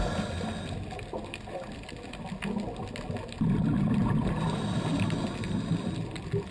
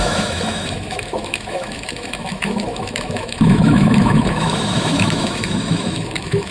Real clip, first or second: first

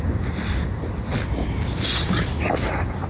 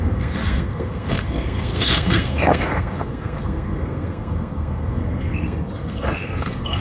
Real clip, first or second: first